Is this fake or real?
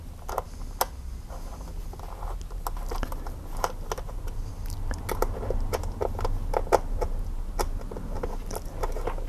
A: real